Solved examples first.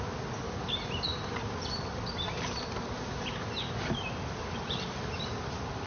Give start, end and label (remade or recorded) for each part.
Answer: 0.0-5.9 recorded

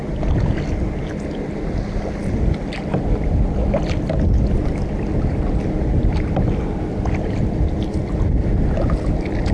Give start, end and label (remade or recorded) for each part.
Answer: 0.0-9.5 recorded